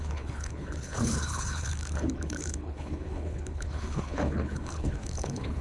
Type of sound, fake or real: fake